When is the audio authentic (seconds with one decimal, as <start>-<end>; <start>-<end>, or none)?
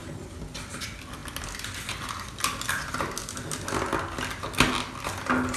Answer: 0.0-5.6